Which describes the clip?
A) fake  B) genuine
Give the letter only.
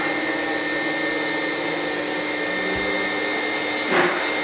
B